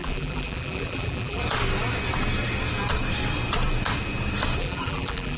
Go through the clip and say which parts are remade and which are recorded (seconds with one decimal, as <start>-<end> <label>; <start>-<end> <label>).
0.0-1.4 remade; 1.4-4.6 recorded; 4.6-5.4 remade